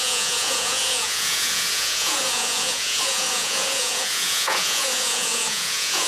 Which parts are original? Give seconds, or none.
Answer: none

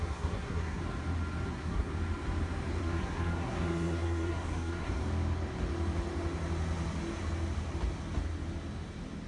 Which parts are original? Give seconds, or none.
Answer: 0.8-1.5; 1.9-2.8; 5.0-9.3

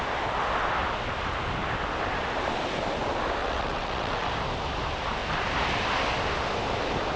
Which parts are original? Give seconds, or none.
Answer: 0.0-3.4; 4.3-7.2